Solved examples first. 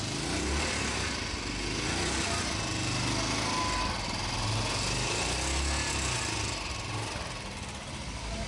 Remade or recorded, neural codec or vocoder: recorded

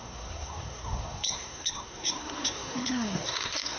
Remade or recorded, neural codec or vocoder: remade, codec, SNAC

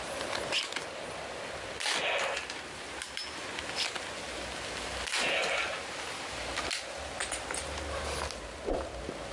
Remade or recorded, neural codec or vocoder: recorded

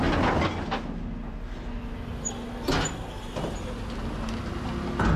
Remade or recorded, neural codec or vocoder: recorded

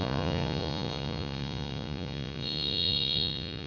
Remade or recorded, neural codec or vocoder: remade, vocoder, Vocos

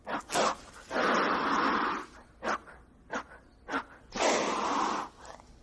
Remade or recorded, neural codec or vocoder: recorded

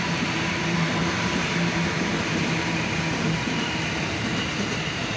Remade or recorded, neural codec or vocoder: remade, vocoder, BigVGAN v2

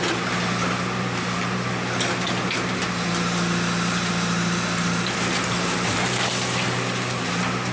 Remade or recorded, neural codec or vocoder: recorded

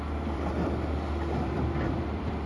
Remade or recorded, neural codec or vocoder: remade, vocoder, BigVGAN v2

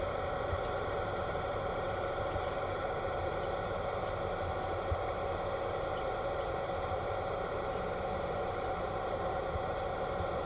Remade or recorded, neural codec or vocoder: remade, vocoder, BigVGAN v2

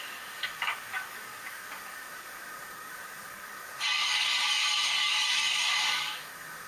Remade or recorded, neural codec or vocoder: remade, codec, DAC